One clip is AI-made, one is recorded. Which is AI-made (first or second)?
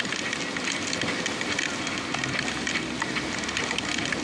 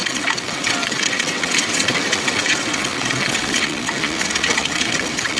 second